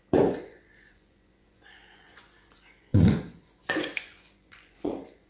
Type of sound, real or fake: fake